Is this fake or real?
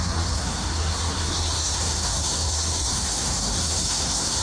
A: fake